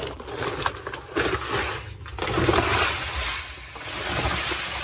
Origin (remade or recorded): recorded